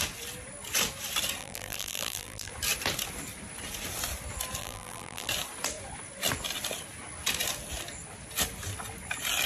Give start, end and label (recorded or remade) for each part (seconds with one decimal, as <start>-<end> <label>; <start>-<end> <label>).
0.0-1.4 recorded; 1.4-2.5 remade; 2.5-4.6 recorded; 4.6-5.3 remade; 5.3-9.5 recorded